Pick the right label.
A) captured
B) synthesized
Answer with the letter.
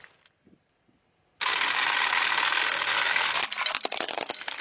A